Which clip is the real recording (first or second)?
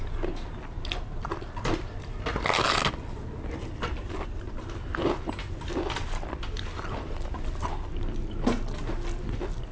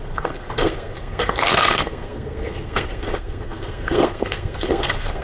first